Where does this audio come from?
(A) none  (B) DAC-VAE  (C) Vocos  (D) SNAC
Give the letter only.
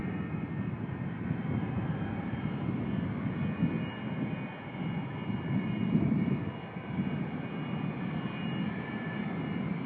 A